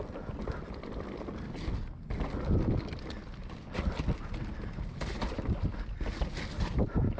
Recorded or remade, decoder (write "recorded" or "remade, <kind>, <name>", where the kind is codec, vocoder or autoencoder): recorded